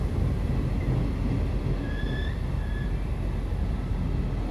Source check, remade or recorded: recorded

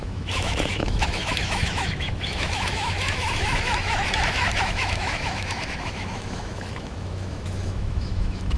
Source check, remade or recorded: remade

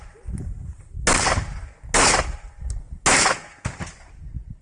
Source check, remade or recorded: recorded